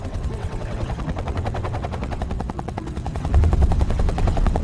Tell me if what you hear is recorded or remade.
remade